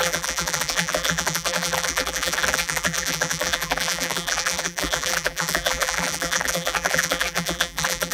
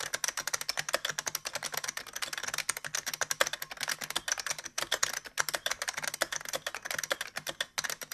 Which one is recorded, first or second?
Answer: second